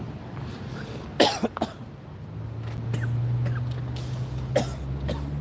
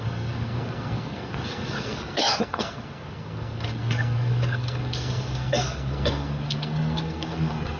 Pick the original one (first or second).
first